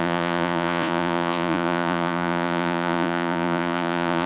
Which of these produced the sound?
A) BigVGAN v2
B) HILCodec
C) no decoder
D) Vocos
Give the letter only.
D